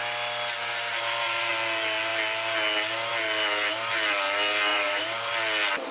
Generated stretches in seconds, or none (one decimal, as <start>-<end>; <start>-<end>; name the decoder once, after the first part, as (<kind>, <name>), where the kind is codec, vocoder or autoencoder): 0.9-1.5 (vocoder, BigVGAN v2); 4.7-5.3